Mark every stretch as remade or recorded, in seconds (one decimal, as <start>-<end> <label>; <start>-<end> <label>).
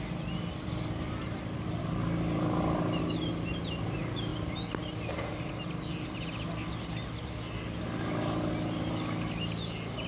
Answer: 0.0-10.1 recorded